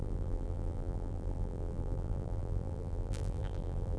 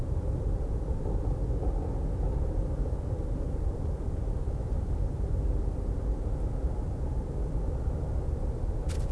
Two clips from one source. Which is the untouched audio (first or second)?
second